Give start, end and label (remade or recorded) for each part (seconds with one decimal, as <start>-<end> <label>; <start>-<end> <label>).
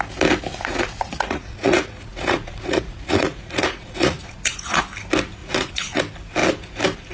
0.0-0.5 recorded; 0.5-4.8 remade; 4.8-5.4 recorded; 5.4-6.0 remade; 6.0-7.1 recorded